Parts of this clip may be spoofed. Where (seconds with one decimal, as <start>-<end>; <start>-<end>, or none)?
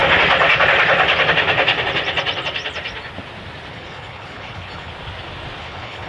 3.7-4.9; 5.6-6.1